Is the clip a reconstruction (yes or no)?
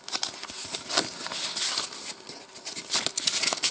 no